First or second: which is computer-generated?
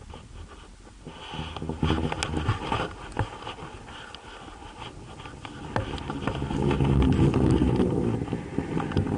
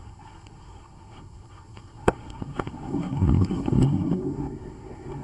second